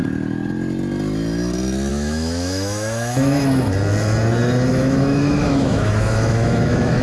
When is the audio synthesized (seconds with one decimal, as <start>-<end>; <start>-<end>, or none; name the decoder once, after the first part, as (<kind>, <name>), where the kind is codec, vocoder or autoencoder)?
1.9-3.4 (autoencoder, DAC-VAE); 4.7-7.0